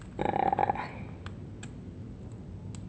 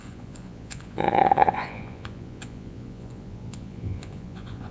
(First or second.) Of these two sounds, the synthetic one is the second